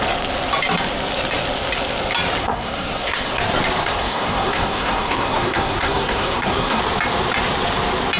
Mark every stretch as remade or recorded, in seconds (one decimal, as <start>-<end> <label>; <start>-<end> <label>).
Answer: 0.0-2.4 recorded; 2.4-3.4 remade; 3.4-3.8 recorded; 3.8-6.8 remade; 6.8-8.2 recorded